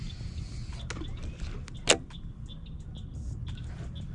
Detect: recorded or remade recorded